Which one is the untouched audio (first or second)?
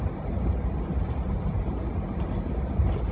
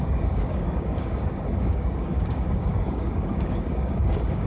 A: first